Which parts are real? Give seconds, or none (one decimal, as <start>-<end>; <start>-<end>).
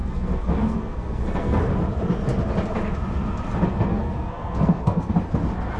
1.6-3.9; 5.1-5.8